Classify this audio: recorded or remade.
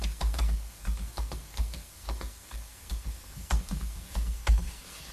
remade